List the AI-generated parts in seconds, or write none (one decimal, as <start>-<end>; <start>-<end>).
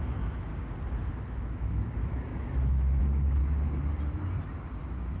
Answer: 0.0-0.5; 1.1-3.4; 4.8-5.2